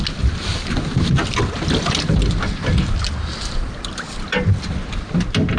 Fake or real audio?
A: real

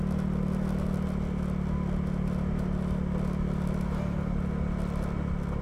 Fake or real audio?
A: real